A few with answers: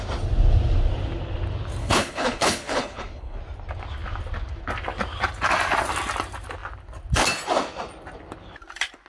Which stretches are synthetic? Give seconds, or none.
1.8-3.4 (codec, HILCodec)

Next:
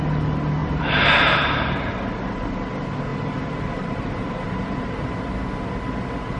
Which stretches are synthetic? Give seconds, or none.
0.6-1.9 (vocoder, BigVGAN v2); 3.1-5.1

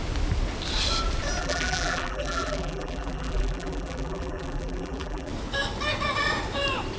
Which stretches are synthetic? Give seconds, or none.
1.4-5.3 (vocoder, BigVGAN v2)

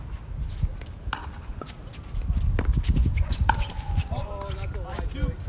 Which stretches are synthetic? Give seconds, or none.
1.2-1.7 (vocoder, Vocos); 3.0-4.3